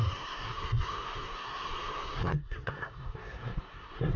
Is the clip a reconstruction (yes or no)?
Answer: yes